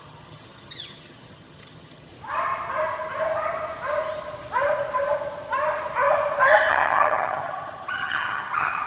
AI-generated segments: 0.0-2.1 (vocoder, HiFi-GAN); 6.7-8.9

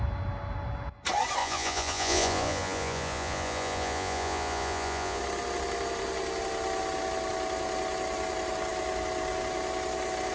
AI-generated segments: 1.4-5.2 (vocoder, Vocos)

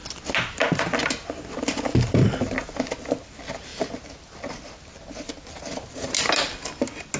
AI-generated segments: none

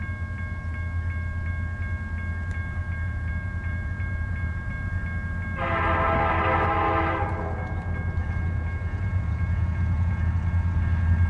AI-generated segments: 2.8-4.7 (vocoder, Vocos); 8.2-10.3